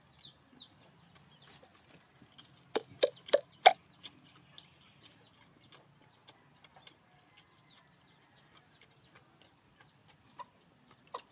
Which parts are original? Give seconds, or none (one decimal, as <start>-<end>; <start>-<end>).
0.0-11.3